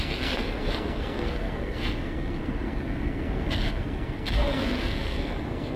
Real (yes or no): no